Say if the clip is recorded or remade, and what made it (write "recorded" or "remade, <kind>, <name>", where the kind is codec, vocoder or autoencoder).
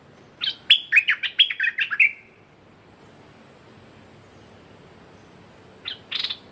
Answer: recorded